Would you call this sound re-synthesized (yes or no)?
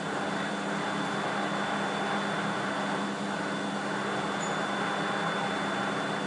no